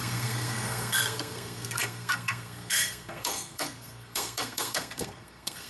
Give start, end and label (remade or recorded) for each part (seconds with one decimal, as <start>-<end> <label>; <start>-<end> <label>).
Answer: 0.0-5.7 remade